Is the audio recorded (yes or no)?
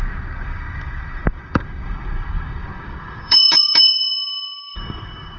no